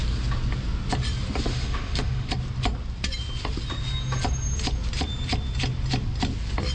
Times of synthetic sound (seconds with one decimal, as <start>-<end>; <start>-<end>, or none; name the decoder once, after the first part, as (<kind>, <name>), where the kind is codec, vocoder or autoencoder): 1.5-2.3 (autoencoder, DAC-VAE)